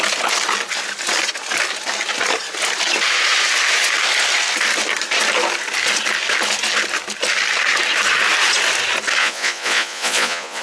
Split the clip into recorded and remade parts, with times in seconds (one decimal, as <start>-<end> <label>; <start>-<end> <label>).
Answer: 0.0-9.2 recorded; 9.2-10.6 remade